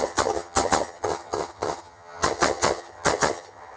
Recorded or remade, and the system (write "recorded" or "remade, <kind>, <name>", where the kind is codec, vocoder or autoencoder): remade, vocoder, HiFi-GAN